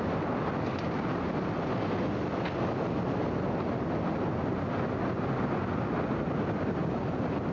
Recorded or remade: recorded